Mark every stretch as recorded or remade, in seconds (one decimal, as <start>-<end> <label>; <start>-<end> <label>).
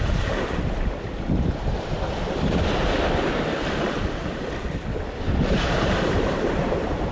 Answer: 0.0-2.8 remade; 2.8-5.4 recorded; 5.4-7.1 remade